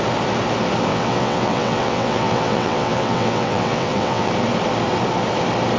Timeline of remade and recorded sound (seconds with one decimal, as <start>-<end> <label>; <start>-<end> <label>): 0.0-0.9 recorded; 0.9-4.3 remade; 4.3-5.8 recorded